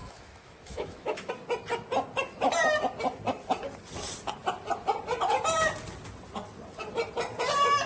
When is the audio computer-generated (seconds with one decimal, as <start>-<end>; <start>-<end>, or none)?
0.0-1.3